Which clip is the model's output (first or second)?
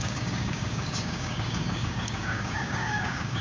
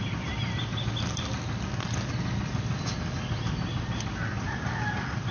first